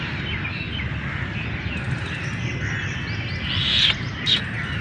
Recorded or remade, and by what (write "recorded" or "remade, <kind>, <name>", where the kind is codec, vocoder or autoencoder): recorded